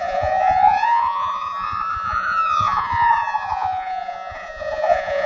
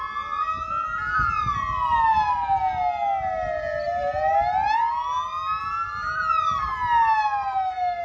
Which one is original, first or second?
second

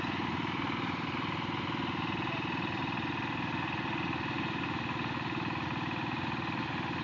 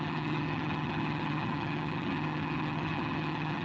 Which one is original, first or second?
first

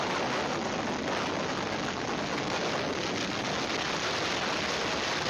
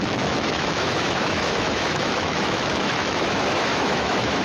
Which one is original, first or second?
first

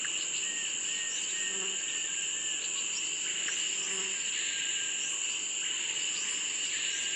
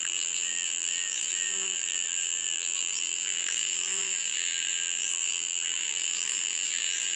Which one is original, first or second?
first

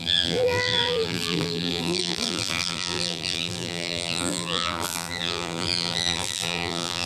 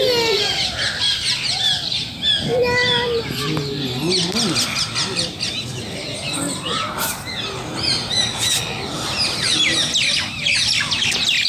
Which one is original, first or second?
second